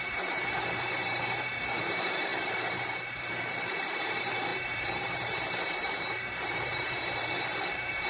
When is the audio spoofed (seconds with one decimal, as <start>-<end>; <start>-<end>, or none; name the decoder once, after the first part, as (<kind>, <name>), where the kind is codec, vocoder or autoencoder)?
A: 0.0-8.1 (vocoder, BigVGAN v2)